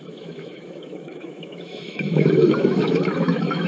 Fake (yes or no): yes